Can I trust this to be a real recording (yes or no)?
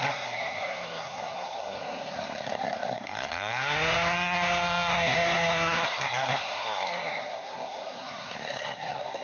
no